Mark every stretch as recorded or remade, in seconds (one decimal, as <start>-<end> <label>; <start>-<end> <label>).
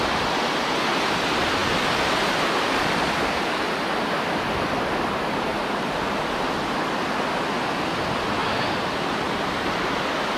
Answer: 0.0-10.4 recorded